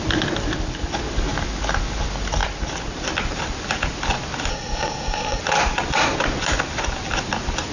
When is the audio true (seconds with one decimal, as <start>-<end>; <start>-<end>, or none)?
0.0-4.5; 5.4-7.7